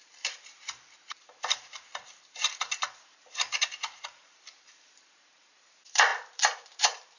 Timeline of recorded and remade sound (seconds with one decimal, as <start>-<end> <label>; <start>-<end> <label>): 0.0-7.2 remade